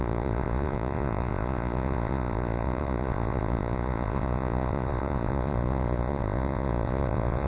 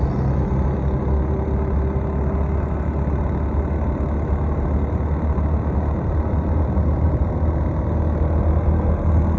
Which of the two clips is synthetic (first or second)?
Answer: first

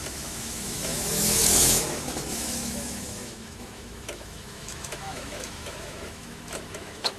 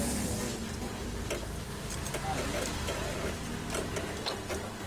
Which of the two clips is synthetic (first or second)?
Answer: first